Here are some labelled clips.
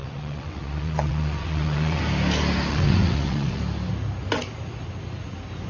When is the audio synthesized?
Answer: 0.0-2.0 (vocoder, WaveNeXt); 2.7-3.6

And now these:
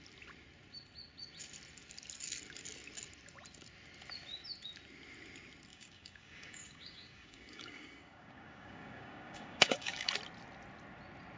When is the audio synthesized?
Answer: 5.7-10.1 (codec, DAC)

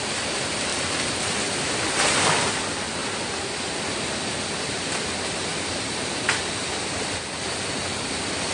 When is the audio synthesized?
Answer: 0.0-3.0 (vocoder, BigVGAN v2); 3.6-8.5

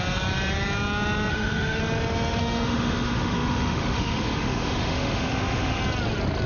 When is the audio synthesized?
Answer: 1.3-1.8 (autoencoder, DAC-VAE); 2.4-5.8

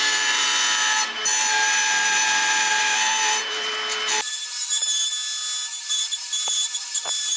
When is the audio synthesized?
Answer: 0.0-4.8 (vocoder, BigVGAN v2); 5.8-7.4